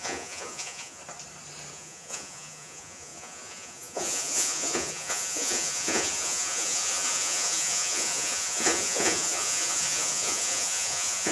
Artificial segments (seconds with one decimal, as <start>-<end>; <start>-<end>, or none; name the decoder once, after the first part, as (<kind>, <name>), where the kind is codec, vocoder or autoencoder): 0.0-1.0 (vocoder, Vocos); 1.7-11.3